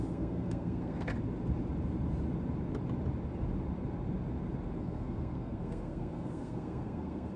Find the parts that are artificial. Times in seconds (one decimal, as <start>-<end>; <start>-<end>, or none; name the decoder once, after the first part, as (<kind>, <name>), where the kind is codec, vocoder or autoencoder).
0.0-1.1 (codec, SNAC); 4.8-7.4